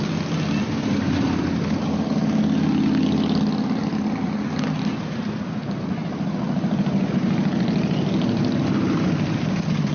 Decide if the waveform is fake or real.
real